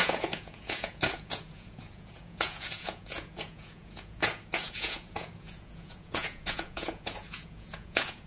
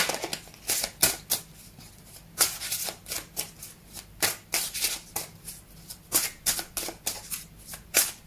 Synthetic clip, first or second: first